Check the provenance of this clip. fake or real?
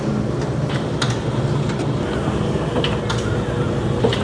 real